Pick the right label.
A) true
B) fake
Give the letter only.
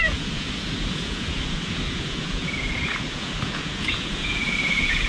B